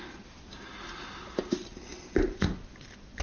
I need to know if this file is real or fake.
real